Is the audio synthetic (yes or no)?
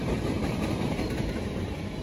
yes